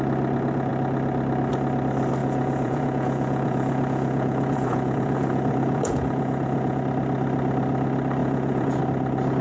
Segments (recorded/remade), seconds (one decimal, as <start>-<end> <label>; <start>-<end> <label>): 0.0-2.2 recorded; 2.2-6.8 remade; 6.8-8.2 recorded; 8.2-8.8 remade; 8.8-9.4 recorded